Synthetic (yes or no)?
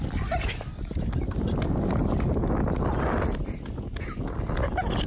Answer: no